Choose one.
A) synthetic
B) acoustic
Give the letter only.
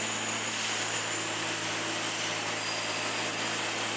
B